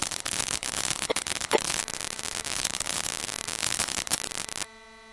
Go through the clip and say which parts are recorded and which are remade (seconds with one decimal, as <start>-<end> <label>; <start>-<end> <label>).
0.0-1.8 remade; 1.8-2.5 recorded; 2.5-3.1 remade; 3.1-3.6 recorded; 3.6-4.2 remade; 4.2-5.1 recorded